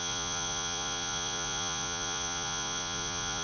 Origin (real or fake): fake